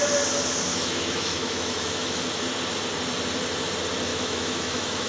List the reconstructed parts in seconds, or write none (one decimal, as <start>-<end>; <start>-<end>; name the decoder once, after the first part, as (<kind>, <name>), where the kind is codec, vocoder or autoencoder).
0.7-2.2 (autoencoder, DAC-VAE); 4.1-5.1